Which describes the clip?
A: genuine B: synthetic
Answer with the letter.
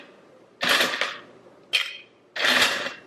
A